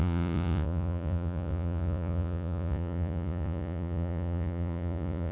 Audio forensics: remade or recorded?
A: remade